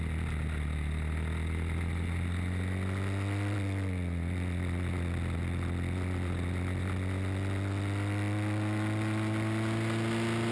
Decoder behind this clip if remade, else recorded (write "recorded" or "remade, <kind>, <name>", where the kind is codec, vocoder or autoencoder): recorded